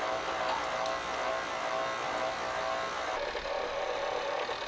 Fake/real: real